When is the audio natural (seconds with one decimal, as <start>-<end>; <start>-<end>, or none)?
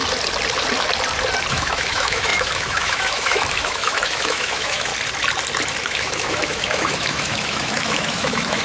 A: 0.0-1.5; 4.9-5.8